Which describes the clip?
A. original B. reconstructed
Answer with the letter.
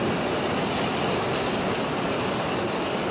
A